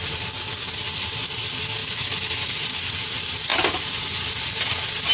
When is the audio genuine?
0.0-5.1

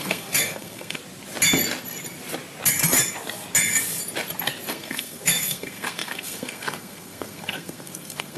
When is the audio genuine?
1.0-4.7